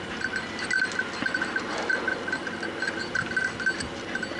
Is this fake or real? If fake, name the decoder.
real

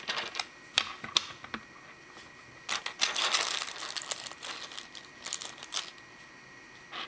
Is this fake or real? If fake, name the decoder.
real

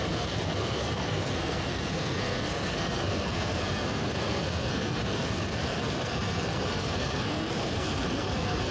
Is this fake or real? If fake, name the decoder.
fake, codec, SNAC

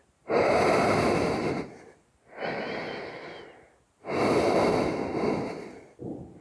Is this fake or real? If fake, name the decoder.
real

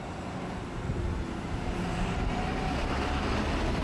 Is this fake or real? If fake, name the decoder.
real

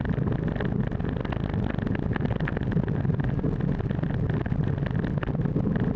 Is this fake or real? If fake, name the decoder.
real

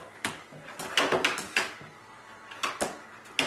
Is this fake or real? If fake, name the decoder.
real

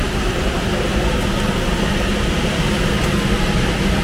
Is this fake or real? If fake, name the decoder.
real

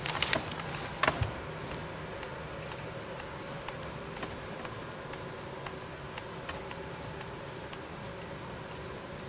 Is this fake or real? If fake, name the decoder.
real